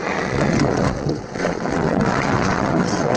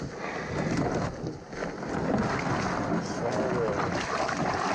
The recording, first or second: second